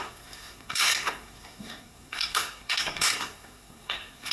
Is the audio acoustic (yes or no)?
no